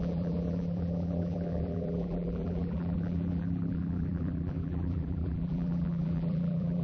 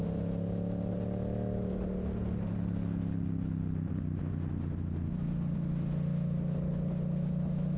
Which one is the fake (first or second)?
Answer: first